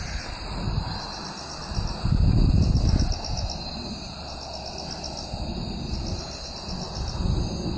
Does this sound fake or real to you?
real